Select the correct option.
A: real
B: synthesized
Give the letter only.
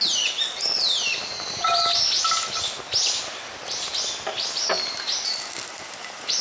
A